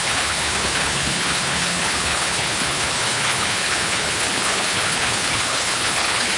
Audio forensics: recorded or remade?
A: remade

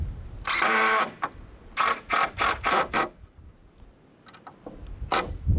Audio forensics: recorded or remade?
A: recorded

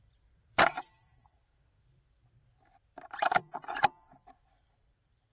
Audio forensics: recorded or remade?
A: remade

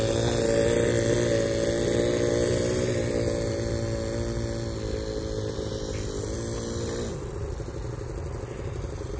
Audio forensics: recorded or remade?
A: recorded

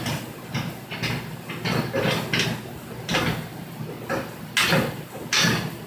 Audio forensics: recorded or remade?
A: recorded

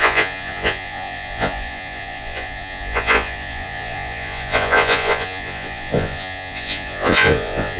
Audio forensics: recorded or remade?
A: remade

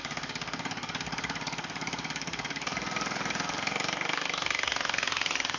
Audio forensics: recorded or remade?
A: remade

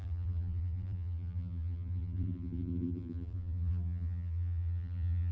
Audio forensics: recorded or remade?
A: remade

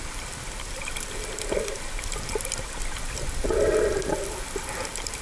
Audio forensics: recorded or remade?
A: remade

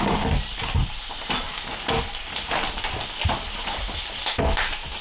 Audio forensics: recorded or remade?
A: recorded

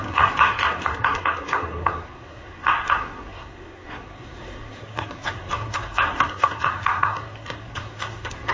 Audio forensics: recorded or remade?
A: remade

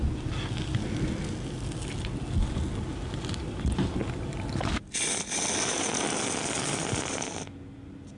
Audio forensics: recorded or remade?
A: recorded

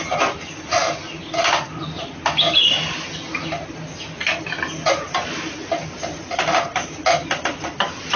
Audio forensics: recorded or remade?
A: recorded